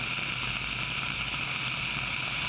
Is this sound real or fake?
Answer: real